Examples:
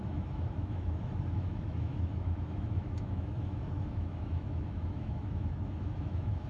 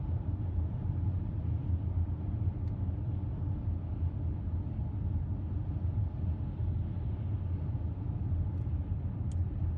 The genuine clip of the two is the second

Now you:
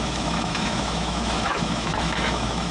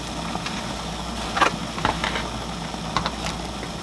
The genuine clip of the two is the second